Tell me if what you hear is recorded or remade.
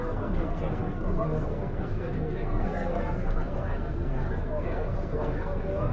remade